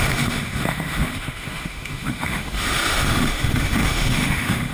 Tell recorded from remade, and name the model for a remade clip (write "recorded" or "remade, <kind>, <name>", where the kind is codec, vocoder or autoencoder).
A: remade, autoencoder, DAC-VAE